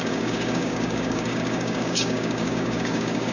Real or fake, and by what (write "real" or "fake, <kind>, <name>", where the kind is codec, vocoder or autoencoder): fake, codec, DAC